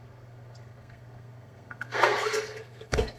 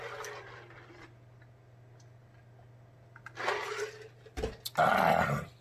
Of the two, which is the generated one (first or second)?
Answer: first